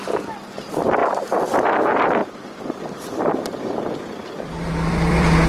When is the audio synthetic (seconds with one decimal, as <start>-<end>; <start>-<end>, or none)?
0.0-1.0; 1.7-2.2; 4.0-5.5

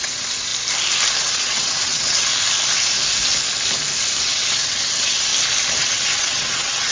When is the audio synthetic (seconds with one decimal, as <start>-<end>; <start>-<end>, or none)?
0.0-0.5; 1.2-2.3; 4.2-5.3; 5.8-6.9

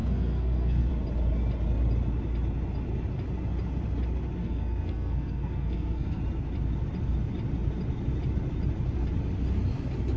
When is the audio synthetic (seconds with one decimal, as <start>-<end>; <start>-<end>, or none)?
0.0-0.9; 4.4-6.2